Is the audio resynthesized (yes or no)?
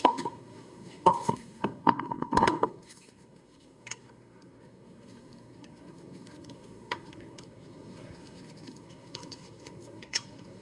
yes